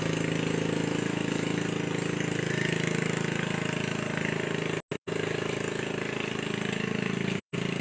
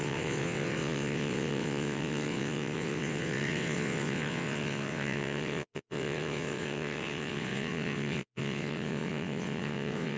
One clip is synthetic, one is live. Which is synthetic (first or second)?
second